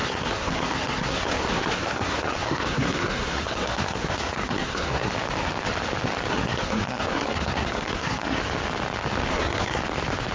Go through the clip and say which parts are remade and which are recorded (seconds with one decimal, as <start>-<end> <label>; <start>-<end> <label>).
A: 0.0-5.1 remade; 5.1-6.3 recorded; 6.3-8.4 remade; 8.4-9.3 recorded; 9.3-9.8 remade; 9.8-10.3 recorded